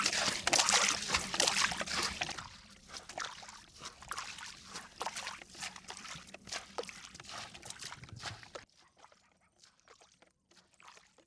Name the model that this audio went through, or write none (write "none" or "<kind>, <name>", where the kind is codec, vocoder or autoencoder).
none